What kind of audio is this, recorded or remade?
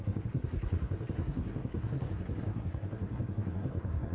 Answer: remade